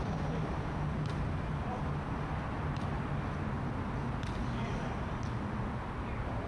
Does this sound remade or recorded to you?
recorded